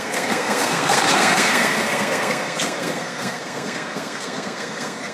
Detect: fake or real fake